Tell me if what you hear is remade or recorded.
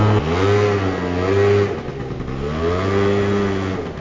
recorded